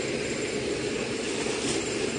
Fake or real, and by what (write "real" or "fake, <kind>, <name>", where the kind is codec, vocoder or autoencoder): real